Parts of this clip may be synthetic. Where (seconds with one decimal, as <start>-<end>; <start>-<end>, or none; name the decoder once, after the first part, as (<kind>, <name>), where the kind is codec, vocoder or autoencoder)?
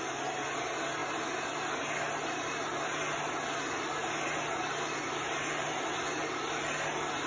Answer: none